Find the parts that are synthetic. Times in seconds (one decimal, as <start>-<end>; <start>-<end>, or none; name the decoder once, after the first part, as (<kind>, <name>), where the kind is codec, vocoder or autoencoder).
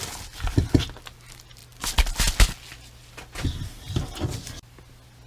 none